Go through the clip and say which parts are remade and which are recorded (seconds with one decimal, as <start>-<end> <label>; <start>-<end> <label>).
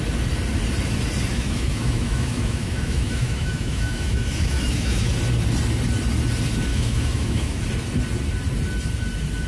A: 0.0-1.3 recorded; 1.3-5.1 remade; 5.1-6.7 recorded; 6.7-7.6 remade; 7.6-9.5 recorded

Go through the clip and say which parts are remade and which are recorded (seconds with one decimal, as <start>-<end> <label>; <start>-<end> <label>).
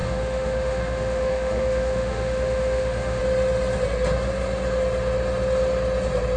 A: 0.0-3.2 remade; 3.2-6.4 recorded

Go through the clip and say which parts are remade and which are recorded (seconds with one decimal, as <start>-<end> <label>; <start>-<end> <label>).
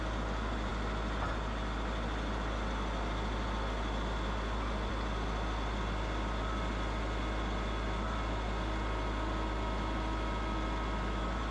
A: 0.0-11.5 recorded